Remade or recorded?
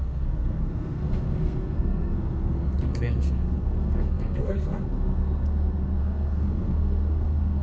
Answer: remade